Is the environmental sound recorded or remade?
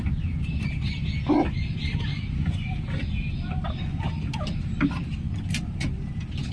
recorded